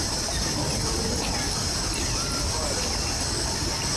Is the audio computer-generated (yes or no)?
no